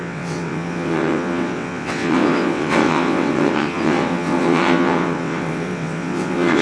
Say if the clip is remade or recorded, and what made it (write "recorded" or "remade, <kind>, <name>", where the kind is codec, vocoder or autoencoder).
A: remade, vocoder, WaveNeXt